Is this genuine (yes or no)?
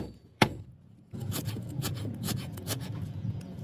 no